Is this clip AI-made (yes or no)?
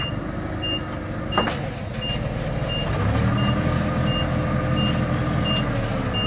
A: no